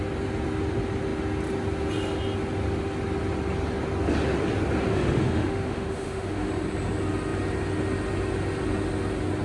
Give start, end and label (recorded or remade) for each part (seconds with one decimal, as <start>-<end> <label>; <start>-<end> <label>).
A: 0.0-4.9 recorded; 4.9-6.5 remade; 6.5-9.4 recorded